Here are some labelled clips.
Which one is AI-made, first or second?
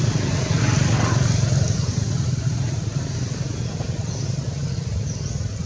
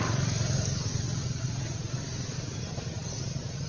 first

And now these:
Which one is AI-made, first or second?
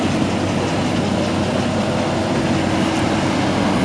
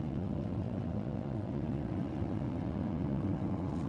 second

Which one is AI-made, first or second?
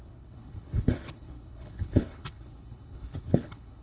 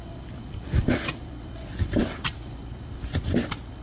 first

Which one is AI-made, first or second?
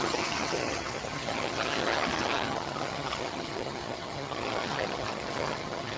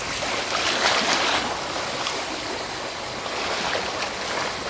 first